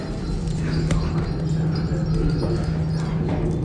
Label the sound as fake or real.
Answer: real